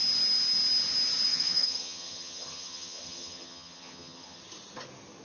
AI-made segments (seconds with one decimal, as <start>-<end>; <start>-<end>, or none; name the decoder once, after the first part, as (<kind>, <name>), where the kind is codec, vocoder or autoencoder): 1.3-4.4 (vocoder, HiFi-GAN)

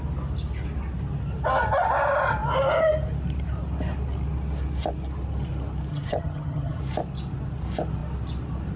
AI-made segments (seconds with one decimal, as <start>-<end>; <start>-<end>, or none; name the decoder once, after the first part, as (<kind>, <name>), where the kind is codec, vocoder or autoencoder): 5.9-6.8 (vocoder, HiFi-GAN)

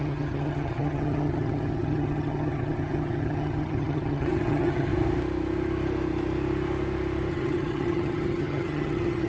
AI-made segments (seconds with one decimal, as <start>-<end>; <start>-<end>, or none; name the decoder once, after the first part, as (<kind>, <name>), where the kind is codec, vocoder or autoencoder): 0.0-4.9 (vocoder, HiFi-GAN); 7.3-9.3

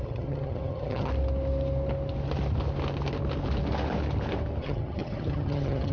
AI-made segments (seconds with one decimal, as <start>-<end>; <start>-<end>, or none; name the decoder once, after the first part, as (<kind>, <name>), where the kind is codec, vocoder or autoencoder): 0.0-1.1 (vocoder, HiFi-GAN); 4.6-5.9

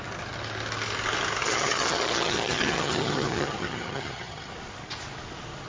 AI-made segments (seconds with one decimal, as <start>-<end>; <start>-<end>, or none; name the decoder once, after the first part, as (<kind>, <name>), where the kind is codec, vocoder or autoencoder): 1.4-4.5 (vocoder, HiFi-GAN)

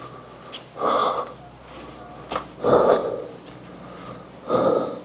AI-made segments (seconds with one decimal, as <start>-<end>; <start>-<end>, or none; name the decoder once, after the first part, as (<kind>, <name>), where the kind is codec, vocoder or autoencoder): none

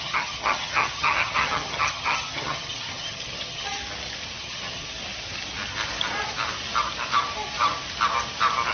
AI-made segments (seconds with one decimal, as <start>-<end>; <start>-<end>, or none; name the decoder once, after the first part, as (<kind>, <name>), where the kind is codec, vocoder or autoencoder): 0.0-3.8 (vocoder, HiFi-GAN); 4.4-4.9